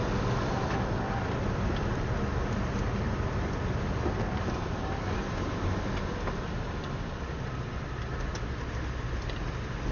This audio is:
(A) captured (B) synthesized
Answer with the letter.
A